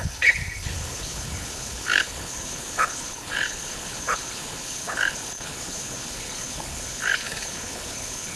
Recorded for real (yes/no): no